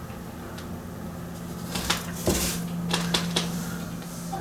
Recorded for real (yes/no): yes